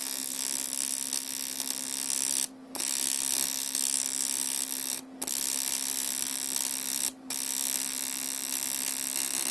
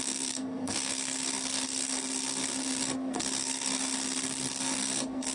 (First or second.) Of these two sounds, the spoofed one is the second